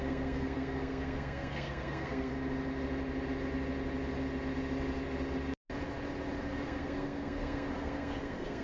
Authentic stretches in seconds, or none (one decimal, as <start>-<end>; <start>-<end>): 2.3-6.4